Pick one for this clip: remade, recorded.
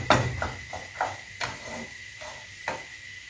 recorded